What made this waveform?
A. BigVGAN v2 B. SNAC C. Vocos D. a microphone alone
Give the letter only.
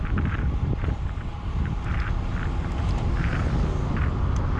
D